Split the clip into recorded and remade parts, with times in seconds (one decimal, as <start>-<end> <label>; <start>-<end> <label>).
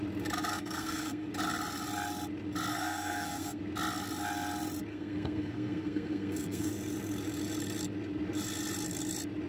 0.0-0.5 recorded; 0.5-1.3 remade; 1.3-2.7 recorded; 2.7-3.6 remade; 3.6-4.9 recorded; 4.9-6.7 remade; 6.7-9.5 recorded